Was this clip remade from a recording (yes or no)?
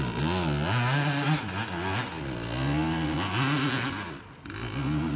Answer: no